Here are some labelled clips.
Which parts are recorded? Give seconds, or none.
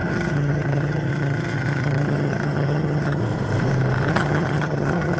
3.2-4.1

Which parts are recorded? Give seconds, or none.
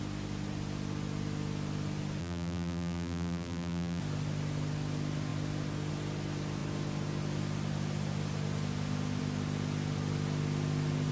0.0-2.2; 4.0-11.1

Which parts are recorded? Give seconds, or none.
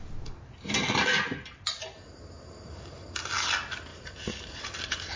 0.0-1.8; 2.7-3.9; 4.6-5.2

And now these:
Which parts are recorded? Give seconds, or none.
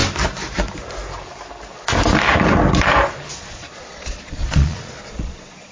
0.0-3.4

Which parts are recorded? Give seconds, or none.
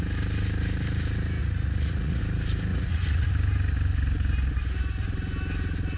0.0-1.4; 2.2-2.7; 3.3-6.0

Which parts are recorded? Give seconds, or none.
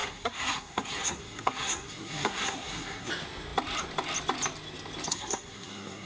3.1-5.1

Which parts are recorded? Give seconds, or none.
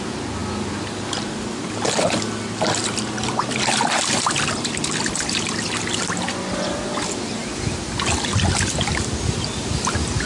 0.0-10.3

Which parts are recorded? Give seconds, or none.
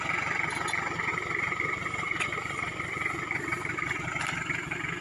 0.0-1.1; 4.1-5.0